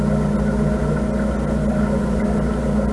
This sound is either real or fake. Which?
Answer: real